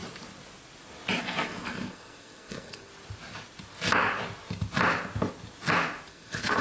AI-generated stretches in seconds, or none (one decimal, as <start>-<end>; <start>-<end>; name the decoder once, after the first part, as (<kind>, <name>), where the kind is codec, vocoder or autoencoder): 1.2-2.9 (codec, SNAC); 6.1-6.6